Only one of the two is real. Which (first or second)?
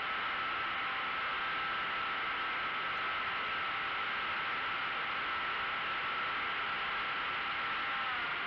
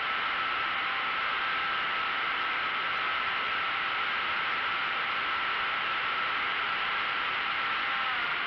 first